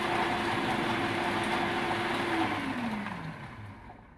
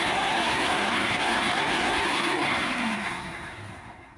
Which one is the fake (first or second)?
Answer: second